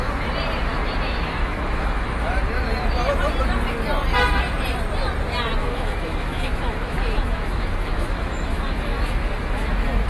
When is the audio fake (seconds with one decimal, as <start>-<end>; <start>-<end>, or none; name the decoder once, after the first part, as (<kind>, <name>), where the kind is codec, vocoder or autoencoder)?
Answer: 0.7-2.3 (autoencoder, DAC-VAE); 5.6-9.7